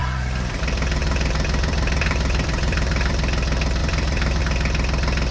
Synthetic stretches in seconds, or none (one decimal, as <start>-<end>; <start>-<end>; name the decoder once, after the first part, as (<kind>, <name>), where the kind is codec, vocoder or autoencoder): 0.0-0.6 (vocoder, BigVGAN v2); 1.0-3.1; 3.8-4.4